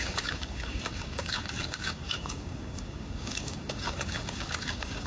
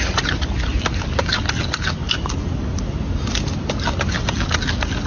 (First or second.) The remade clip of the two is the first